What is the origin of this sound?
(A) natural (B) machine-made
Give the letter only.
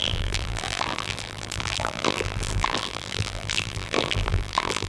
B